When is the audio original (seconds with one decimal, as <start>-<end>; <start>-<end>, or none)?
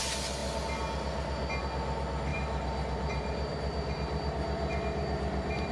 0.0-2.3